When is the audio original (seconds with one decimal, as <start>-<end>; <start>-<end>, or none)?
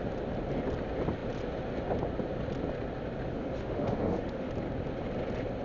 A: 0.0-3.3; 4.5-5.6